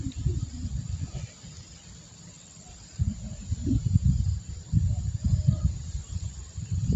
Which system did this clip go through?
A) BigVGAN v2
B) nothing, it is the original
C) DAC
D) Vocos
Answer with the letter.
B